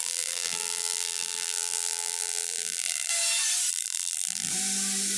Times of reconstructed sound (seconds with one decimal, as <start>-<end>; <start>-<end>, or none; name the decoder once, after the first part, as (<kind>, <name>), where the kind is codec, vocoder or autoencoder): 0.0-3.1 (vocoder, BigVGAN v2); 3.7-4.5

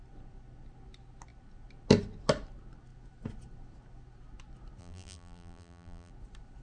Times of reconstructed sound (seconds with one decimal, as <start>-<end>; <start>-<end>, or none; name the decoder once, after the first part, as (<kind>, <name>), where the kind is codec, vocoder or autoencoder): 4.8-6.1 (vocoder, BigVGAN v2)

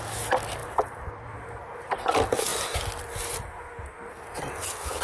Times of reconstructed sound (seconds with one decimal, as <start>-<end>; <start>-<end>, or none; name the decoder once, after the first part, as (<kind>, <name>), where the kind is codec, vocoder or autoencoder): 0.6-1.9 (vocoder, BigVGAN v2)